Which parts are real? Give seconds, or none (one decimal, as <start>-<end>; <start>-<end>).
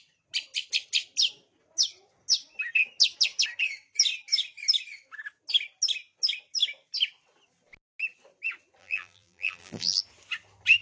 0.0-8.8; 10.0-10.8